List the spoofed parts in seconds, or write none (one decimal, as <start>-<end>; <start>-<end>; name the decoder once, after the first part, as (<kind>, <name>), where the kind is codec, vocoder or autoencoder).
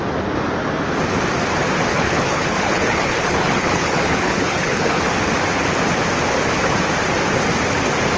1.9-5.0 (codec, HILCodec)